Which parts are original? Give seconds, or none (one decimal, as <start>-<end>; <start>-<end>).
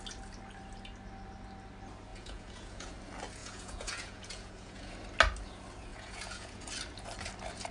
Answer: 0.0-2.1; 2.9-3.4; 4.9-5.9; 6.7-7.7